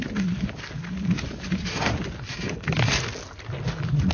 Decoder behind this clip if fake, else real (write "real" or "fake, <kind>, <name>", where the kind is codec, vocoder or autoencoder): real